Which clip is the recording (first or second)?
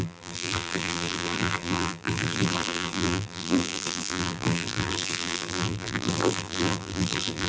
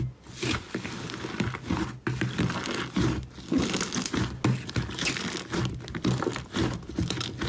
second